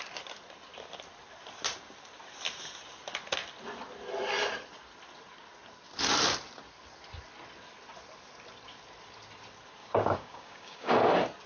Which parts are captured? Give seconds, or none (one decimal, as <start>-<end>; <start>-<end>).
0.0-9.8; 10.9-11.5